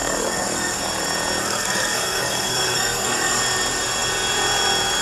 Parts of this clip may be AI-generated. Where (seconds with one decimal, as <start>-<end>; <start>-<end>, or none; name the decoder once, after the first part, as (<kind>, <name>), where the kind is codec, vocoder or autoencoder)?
0.0-0.8 (codec, SNAC); 1.4-3.4